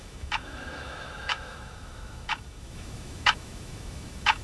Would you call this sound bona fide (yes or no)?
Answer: no